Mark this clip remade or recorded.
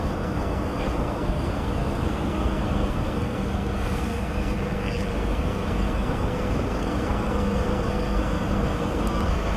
remade